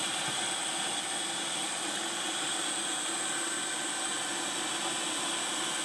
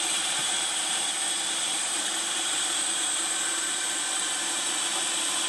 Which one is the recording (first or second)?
first